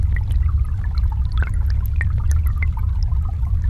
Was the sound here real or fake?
real